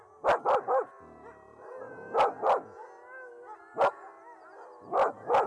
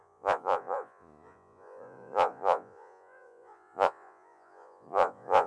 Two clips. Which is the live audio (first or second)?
first